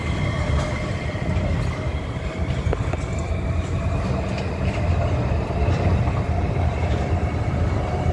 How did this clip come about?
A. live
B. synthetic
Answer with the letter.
A